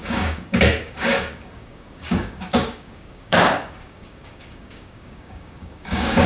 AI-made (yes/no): yes